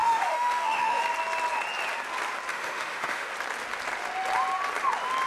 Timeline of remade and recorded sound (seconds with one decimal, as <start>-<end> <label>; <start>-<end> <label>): 0.0-1.0 remade; 1.0-2.5 recorded; 2.5-3.3 remade; 3.3-5.3 recorded